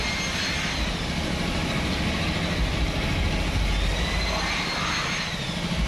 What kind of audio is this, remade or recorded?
recorded